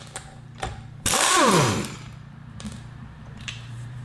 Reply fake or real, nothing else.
fake